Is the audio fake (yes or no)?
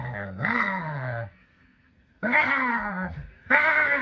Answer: yes